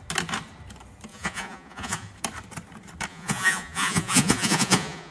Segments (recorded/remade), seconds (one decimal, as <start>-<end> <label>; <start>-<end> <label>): 0.0-1.1 recorded; 1.1-2.1 remade; 2.1-3.1 recorded; 3.1-5.1 remade